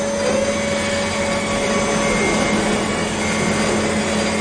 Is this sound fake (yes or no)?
no